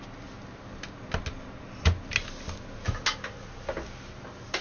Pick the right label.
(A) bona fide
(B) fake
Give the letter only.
A